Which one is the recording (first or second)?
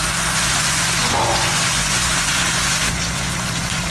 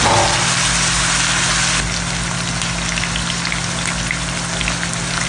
second